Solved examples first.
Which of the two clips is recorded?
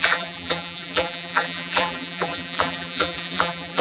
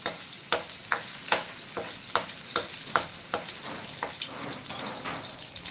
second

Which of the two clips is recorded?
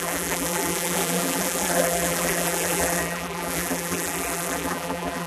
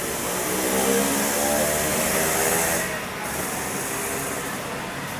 second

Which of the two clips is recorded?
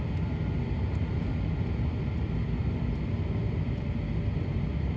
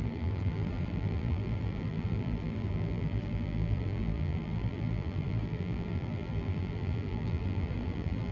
first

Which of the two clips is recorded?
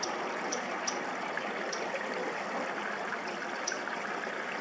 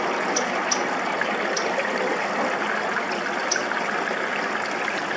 second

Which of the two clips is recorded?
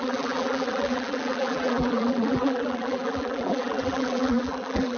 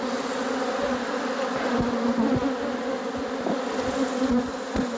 second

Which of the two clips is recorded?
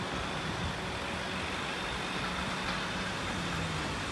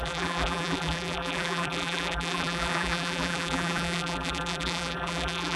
first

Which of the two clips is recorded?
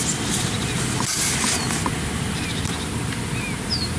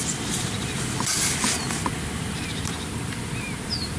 first